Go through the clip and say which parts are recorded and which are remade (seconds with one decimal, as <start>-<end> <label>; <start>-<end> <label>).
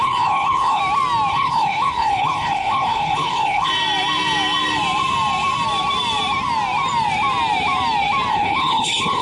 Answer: 0.0-0.8 remade; 0.8-1.3 recorded; 1.3-3.7 remade; 3.7-8.3 recorded; 8.3-9.2 remade